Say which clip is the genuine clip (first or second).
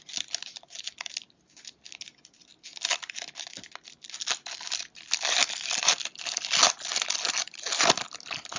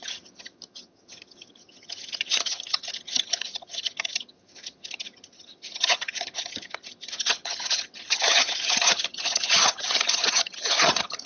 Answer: first